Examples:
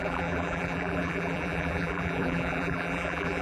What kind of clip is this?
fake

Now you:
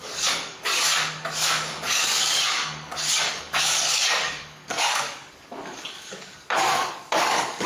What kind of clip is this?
fake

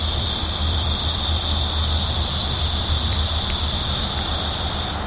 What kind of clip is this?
fake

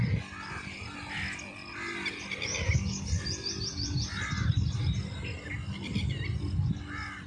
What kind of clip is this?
real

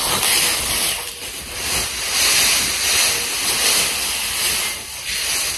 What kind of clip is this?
real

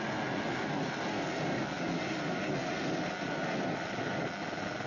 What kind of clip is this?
real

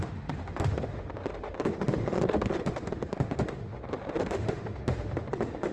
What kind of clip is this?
fake